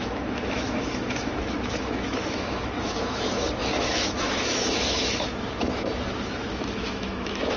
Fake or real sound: fake